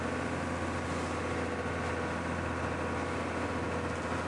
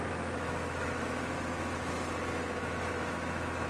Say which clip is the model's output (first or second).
second